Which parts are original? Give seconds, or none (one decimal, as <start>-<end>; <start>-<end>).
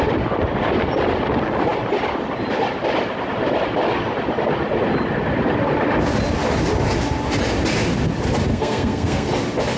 0.0-8.5; 9.3-9.8